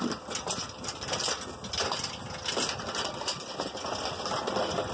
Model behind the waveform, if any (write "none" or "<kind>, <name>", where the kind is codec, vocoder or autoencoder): none